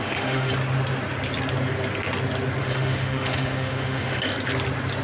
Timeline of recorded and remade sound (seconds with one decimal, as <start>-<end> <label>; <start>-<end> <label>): 0.0-0.5 remade; 0.5-2.6 recorded; 2.6-4.2 remade; 4.2-5.0 recorded